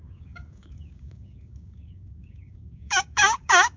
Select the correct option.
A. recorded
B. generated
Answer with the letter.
B